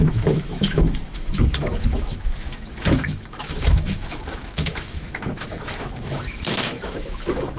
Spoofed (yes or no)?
yes